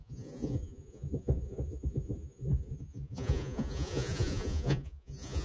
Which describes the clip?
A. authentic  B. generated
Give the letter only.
B